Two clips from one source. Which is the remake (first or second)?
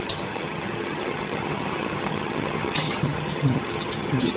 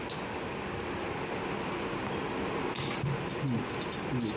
first